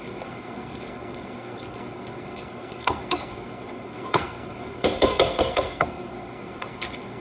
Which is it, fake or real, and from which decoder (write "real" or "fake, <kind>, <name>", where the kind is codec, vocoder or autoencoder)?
fake, codec, SNAC